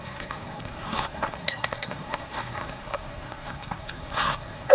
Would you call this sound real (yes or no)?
no